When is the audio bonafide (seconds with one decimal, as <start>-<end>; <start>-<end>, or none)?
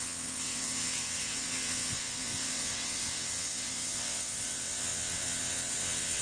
none